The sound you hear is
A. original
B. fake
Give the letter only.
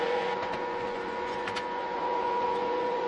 B